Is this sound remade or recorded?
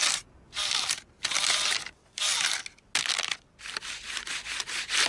recorded